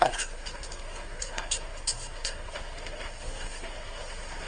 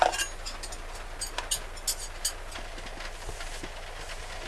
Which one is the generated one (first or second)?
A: first